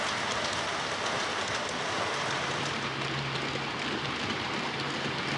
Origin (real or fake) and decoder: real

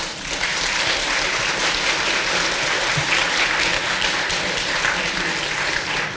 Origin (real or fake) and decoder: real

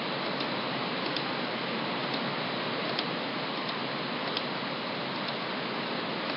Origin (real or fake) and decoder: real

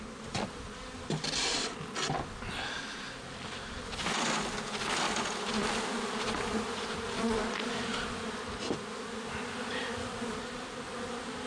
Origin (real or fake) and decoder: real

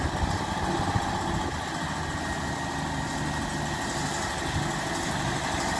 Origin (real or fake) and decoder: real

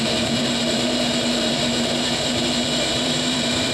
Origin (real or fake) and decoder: fake, vocoder, BigVGAN v2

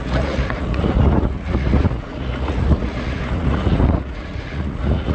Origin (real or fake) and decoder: fake, vocoder, Vocos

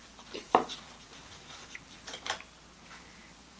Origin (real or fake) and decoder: fake, vocoder, BigVGAN v2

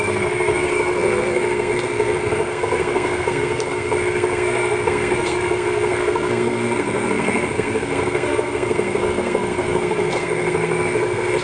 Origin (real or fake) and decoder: fake, codec, SNAC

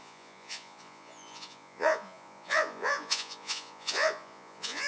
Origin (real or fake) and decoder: fake, vocoder, Vocos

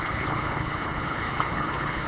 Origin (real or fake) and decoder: fake, codec, HILCodec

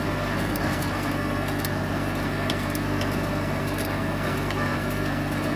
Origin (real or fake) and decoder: fake, codec, SNAC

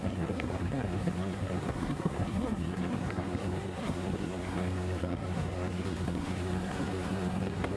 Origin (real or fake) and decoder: fake, codec, SNAC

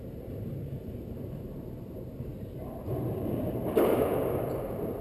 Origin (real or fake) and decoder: fake, vocoder, BigVGAN v2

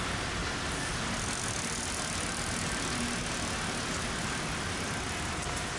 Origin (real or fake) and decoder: real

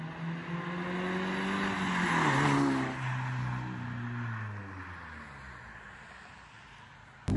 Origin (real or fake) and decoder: real